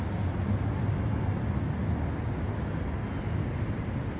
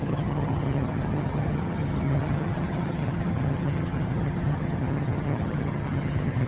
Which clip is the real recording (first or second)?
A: first